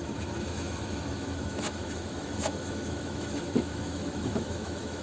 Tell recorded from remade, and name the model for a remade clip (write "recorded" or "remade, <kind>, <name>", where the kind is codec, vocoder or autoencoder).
remade, autoencoder, DAC-VAE